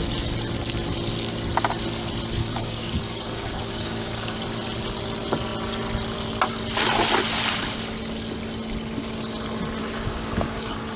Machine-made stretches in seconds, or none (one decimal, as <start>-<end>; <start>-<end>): 2.4-4.4; 9.8-11.0